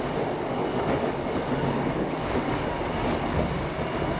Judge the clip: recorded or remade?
remade